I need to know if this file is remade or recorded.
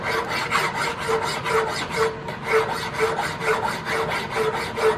recorded